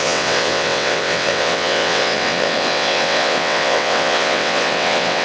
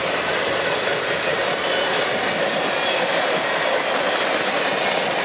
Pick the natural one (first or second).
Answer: second